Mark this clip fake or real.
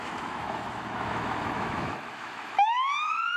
fake